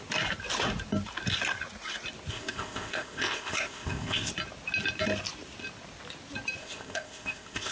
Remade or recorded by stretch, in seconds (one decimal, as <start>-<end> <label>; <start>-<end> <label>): 0.0-2.3 recorded; 2.3-4.3 remade; 4.3-6.6 recorded; 6.6-7.7 remade